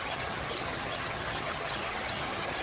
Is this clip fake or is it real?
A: fake